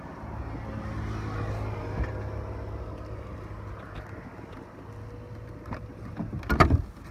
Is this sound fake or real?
real